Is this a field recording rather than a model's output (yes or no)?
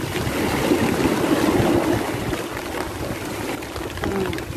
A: yes